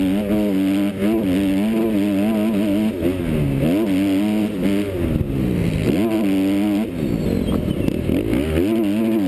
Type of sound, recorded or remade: recorded